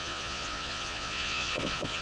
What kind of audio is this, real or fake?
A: fake